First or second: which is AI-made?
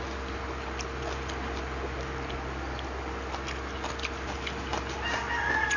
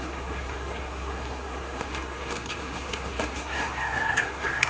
second